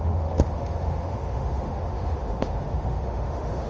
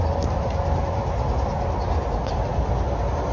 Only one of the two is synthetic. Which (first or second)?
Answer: first